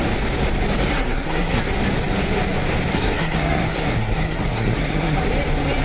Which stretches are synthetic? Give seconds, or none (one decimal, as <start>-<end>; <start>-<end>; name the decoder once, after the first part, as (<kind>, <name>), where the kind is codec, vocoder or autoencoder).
0.9-1.6 (codec, SNAC); 2.9-5.2